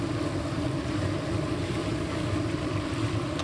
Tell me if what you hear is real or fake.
fake